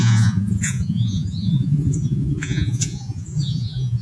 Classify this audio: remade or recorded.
remade